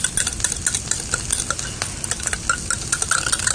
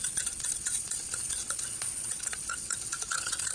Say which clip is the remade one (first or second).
second